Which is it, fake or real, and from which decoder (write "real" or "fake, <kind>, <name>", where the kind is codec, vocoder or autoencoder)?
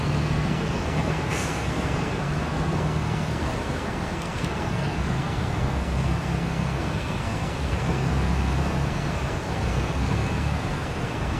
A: fake, codec, SNAC